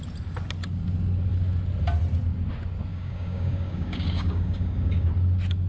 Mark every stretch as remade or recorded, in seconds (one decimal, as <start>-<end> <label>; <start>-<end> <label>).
0.0-2.9 recorded; 2.9-5.1 remade; 5.1-5.7 recorded